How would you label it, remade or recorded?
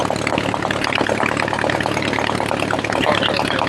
recorded